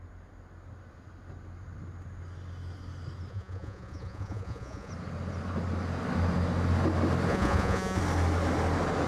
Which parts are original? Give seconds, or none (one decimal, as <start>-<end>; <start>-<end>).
0.0-3.3; 4.9-7.3; 8.0-9.1